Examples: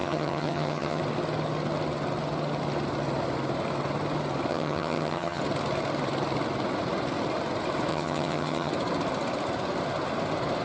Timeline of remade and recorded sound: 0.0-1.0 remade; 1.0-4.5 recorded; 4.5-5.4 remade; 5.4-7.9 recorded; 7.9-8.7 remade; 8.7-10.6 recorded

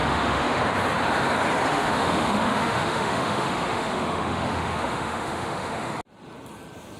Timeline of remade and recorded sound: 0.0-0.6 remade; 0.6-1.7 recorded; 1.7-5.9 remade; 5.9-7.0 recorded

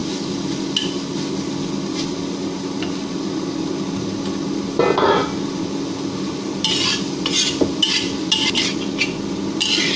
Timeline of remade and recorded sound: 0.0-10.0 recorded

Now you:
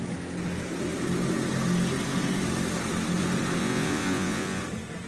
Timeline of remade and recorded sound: 0.0-3.6 recorded; 3.6-4.6 remade; 4.6-5.1 recorded

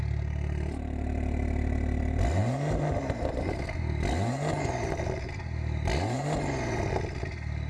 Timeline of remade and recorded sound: 0.0-7.7 recorded